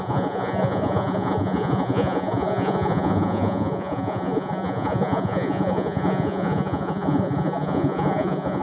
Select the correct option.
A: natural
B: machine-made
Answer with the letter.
B